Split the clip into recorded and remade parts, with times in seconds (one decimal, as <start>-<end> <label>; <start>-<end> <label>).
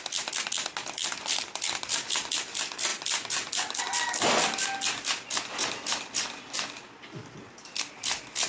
0.0-8.5 recorded